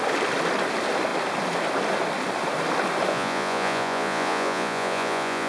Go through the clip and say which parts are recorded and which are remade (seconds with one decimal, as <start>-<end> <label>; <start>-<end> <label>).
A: 0.0-3.1 recorded; 3.1-5.5 remade